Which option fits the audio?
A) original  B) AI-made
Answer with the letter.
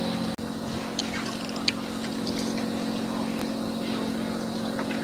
A